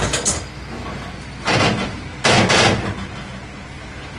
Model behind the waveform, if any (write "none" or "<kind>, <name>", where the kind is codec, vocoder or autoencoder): none